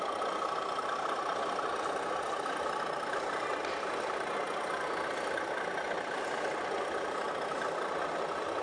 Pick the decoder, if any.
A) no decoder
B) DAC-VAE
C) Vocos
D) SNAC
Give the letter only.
A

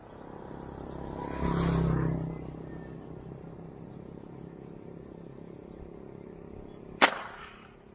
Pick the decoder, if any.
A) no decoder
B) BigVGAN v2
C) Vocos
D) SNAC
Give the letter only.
A